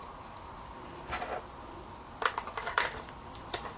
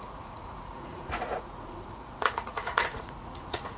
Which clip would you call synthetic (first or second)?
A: second